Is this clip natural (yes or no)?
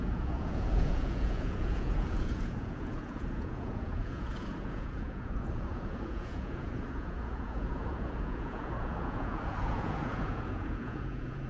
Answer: no